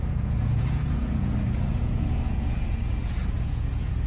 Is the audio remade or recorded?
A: remade